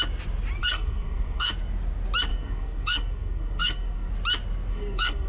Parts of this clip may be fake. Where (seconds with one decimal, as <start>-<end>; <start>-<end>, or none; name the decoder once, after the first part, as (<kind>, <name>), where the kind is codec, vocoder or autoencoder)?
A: 0.6-1.5 (codec, SNAC); 2.3-4.1; 4.7-5.3